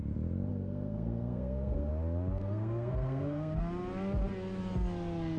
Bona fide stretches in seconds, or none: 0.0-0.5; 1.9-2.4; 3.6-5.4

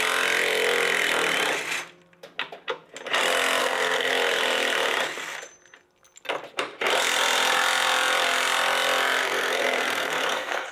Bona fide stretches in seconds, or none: 0.0-3.6; 4.1-9.2

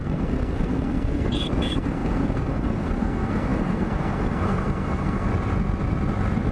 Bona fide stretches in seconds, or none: 5.3-6.5

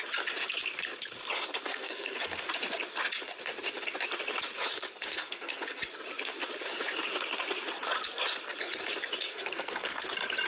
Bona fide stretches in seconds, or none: 0.0-1.7; 2.5-5.1; 5.8-9.3; 10.0-10.5